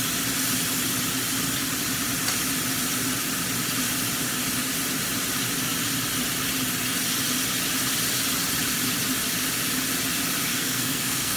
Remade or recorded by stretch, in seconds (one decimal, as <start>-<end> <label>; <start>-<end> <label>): 0.0-10.5 recorded; 10.5-11.4 remade